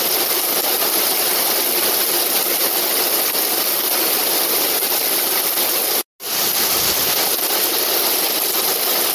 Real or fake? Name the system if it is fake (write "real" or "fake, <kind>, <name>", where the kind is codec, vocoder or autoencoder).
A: real